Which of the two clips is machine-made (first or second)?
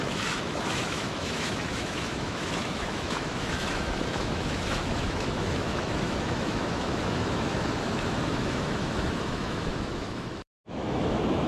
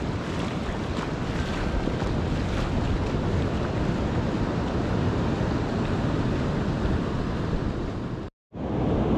first